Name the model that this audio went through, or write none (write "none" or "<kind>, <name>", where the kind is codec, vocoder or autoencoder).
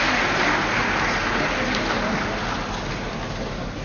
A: none